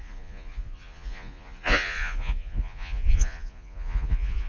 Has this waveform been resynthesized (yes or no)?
yes